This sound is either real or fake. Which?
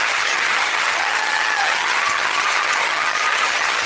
fake